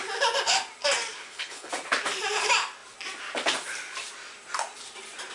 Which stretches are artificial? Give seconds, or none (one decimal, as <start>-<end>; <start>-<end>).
1.2-1.7